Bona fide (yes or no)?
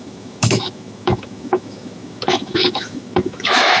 no